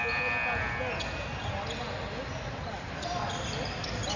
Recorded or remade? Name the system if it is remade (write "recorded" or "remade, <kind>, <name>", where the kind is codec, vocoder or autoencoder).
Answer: recorded